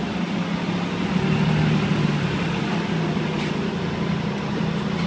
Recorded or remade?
recorded